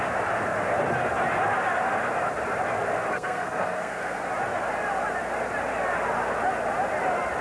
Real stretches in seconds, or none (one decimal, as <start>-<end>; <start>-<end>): 0.0-3.1; 4.2-7.4